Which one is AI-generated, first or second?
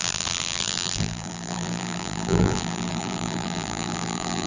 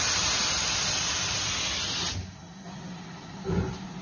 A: first